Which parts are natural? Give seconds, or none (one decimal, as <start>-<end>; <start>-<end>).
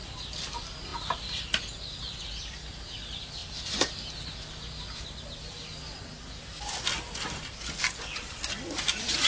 0.0-9.3